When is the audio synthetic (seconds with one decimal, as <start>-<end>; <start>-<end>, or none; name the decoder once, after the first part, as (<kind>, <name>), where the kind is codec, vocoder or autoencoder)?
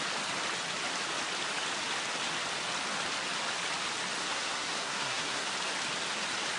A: 4.2-5.5 (codec, SNAC)